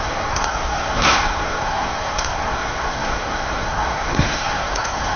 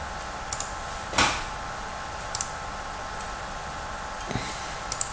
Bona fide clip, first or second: second